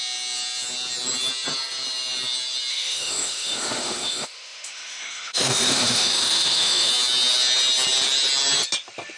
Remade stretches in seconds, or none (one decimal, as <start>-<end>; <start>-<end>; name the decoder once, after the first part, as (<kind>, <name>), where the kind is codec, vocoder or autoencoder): 2.7-6.9 (autoencoder, DAC-VAE)